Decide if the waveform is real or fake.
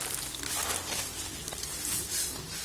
real